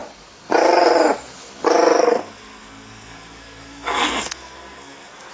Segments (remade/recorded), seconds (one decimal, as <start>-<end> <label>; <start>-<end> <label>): 0.0-2.0 recorded; 2.0-5.3 remade